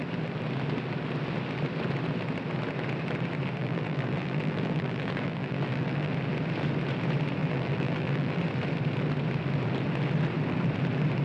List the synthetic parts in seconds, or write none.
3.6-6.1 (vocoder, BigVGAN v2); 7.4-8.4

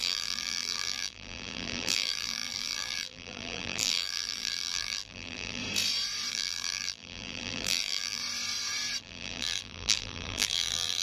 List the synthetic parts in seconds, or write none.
0.0-5.6 (vocoder, BigVGAN v2); 6.3-8.2; 9.0-11.0

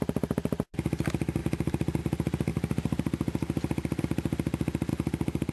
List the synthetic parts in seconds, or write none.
1.4-2.0 (vocoder, BigVGAN v2); 2.5-4.0

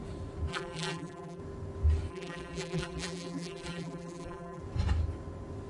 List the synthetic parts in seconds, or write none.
0.5-1.4 (vocoder, BigVGAN v2); 2.1-4.6

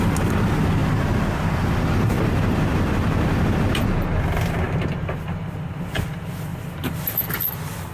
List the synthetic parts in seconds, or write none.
6.5-7.2 (vocoder, BigVGAN v2)

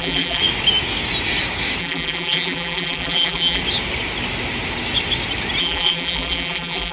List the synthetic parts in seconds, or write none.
0.0-0.4 (vocoder, BigVGAN v2); 1.8-3.6; 5.6-6.9